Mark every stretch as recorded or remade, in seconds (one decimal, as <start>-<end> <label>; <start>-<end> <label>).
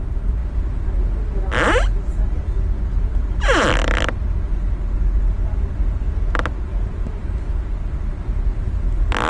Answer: 0.0-9.3 recorded